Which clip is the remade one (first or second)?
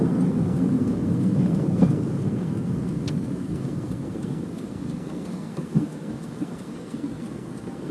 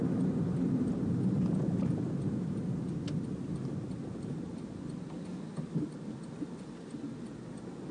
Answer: first